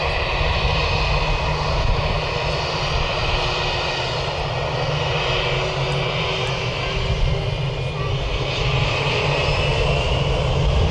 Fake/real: real